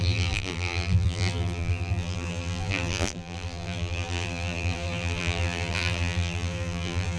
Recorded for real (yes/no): no